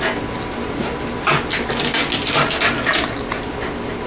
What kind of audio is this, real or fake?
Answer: real